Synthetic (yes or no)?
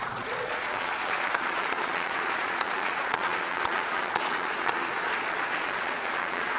yes